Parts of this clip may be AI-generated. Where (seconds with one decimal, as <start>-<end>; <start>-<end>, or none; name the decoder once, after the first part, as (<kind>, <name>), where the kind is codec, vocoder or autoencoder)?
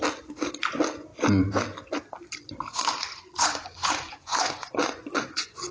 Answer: 3.0-5.7 (vocoder, Vocos)